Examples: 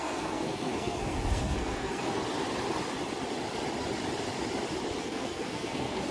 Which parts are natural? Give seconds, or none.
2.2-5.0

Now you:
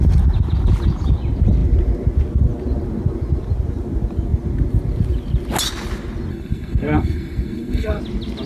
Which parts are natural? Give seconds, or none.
0.0-6.3; 8.0-8.5

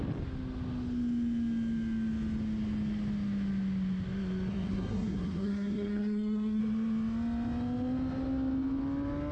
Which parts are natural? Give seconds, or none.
0.0-4.5; 6.6-9.3

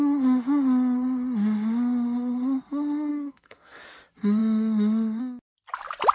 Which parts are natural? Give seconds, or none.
0.0-3.1; 3.8-6.1

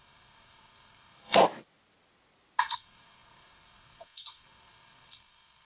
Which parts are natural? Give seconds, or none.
1.4-2.6

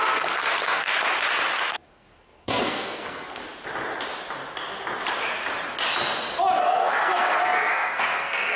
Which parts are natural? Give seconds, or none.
0.9-1.7; 3.4-6.6